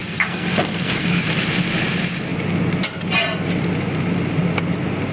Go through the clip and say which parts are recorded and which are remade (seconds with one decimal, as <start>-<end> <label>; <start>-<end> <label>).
0.0-1.2 remade; 1.2-5.1 recorded